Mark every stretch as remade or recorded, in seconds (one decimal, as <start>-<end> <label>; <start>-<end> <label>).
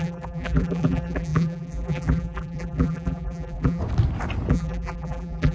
0.0-3.8 remade; 3.8-4.5 recorded; 4.5-5.5 remade